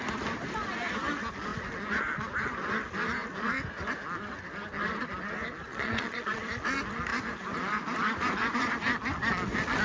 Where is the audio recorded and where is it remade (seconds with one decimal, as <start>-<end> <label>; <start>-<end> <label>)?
0.0-5.7 recorded; 5.7-6.4 remade; 6.4-9.8 recorded